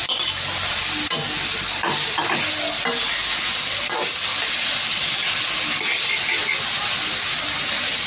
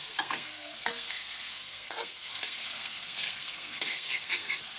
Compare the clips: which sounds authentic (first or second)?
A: first